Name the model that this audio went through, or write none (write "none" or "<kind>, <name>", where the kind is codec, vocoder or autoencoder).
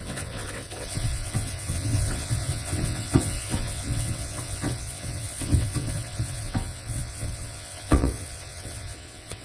vocoder, WaveNeXt